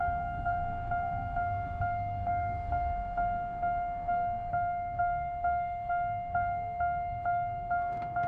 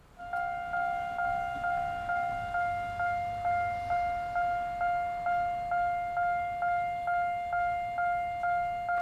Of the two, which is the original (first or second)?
second